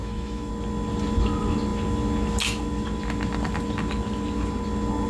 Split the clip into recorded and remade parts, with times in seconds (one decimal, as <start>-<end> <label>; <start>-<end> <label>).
0.0-0.5 remade; 0.5-5.1 recorded